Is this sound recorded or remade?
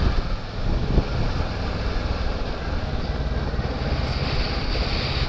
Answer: recorded